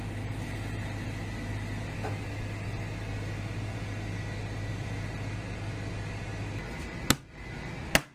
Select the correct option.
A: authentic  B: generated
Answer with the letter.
A